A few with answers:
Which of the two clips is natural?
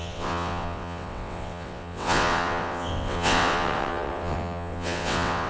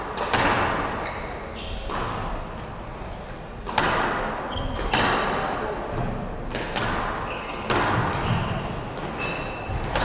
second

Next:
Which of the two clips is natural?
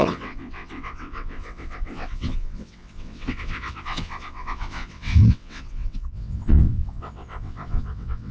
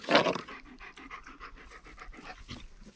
second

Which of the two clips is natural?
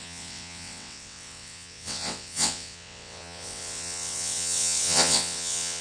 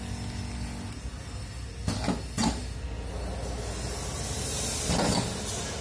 second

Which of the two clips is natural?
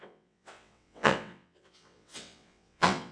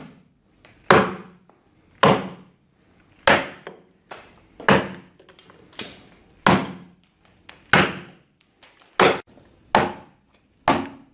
second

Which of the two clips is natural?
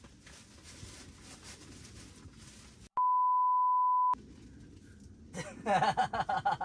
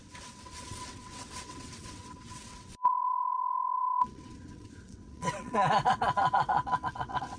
first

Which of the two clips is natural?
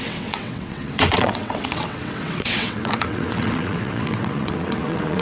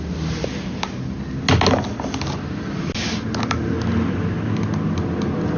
second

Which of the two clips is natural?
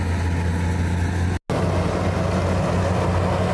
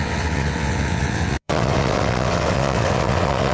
first